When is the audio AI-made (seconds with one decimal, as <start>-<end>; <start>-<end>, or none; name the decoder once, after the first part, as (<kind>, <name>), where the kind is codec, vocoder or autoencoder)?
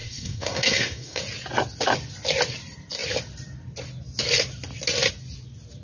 0.0-1.2 (codec, SNAC)